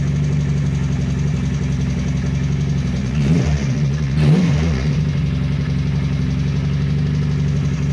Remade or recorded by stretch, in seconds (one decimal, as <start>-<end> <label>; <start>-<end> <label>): 0.0-3.0 recorded; 3.0-4.9 remade; 4.9-7.9 recorded